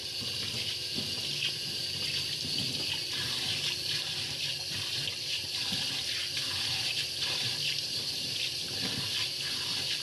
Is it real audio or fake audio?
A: real